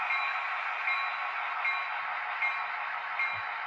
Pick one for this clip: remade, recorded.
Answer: recorded